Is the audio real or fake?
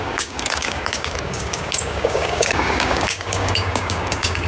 fake